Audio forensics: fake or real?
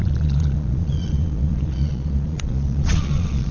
fake